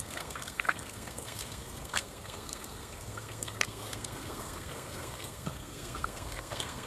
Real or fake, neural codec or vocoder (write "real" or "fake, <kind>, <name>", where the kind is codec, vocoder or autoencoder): fake, codec, SNAC